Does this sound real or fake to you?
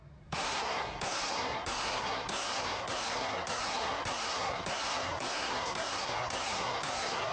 fake